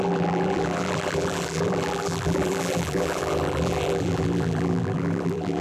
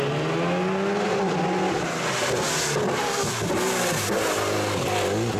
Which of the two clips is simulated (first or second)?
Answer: first